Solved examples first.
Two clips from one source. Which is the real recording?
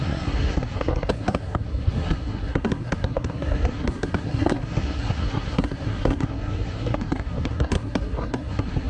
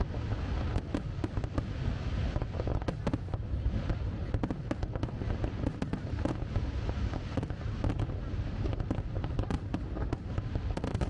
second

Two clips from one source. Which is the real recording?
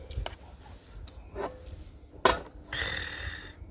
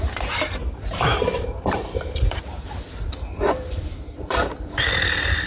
first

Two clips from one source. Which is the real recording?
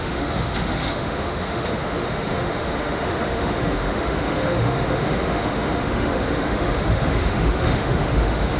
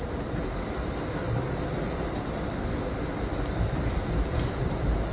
second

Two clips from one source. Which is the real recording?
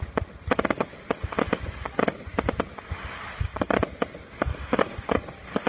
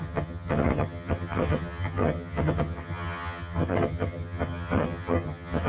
first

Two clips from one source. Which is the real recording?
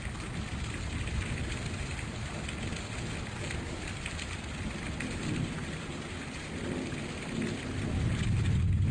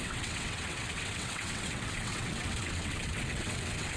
first